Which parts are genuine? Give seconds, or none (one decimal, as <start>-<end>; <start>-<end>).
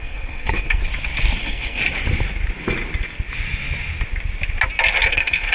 0.8-1.4; 1.8-5.1